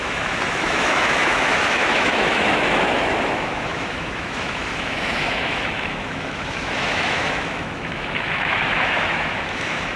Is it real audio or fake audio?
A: fake